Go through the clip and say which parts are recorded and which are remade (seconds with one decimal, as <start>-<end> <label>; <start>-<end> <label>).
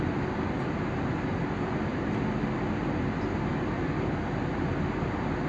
0.0-5.5 recorded